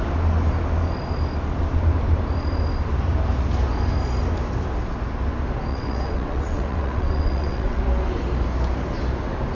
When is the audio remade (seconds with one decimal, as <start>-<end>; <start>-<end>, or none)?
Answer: 5.7-7.8